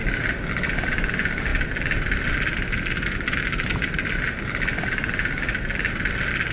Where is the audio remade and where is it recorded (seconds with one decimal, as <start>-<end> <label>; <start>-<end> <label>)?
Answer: 0.0-6.5 recorded